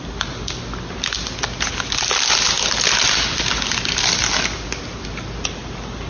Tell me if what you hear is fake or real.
real